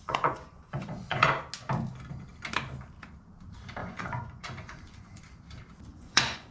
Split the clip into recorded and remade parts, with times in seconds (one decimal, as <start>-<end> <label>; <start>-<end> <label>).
0.0-1.3 remade; 1.3-3.8 recorded; 3.8-5.2 remade; 5.2-5.9 recorded; 5.9-6.5 remade